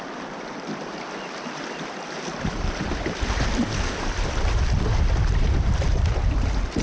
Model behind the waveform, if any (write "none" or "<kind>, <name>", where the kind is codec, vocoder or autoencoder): vocoder, BigVGAN v2